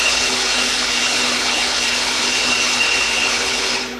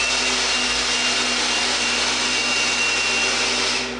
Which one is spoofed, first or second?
first